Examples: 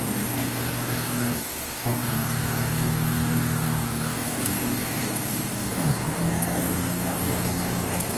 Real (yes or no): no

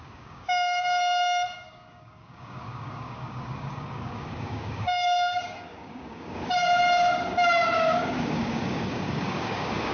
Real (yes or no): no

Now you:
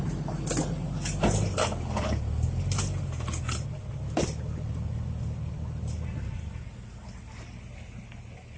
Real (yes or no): yes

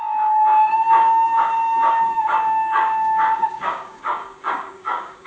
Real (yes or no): no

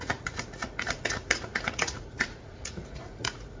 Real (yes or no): no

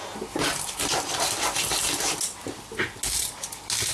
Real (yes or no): yes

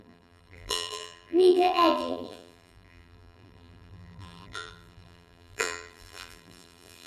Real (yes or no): no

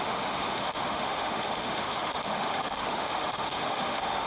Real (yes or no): no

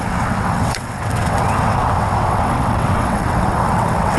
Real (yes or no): no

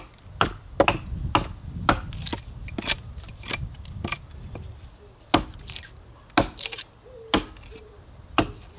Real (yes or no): yes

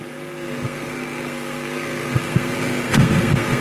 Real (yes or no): no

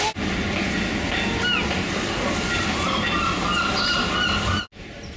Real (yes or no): yes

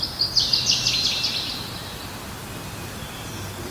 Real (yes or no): yes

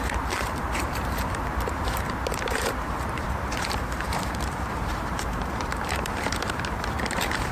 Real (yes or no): no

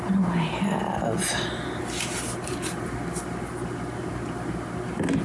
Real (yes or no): yes